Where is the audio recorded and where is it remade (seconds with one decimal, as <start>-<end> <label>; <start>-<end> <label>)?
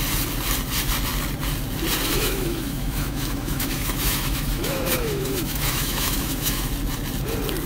0.0-2.1 recorded; 2.1-6.7 remade; 6.7-7.7 recorded